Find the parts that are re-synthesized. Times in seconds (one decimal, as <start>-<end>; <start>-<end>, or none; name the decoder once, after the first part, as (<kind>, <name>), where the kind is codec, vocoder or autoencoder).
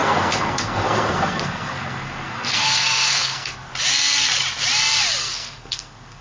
0.0-3.7 (codec, SNAC); 5.2-6.2